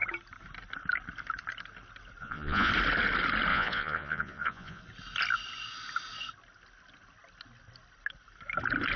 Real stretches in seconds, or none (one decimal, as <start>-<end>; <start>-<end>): 0.0-2.2; 2.7-3.5; 4.8-9.0